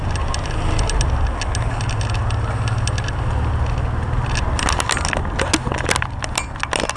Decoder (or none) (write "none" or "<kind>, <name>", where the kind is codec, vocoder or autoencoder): none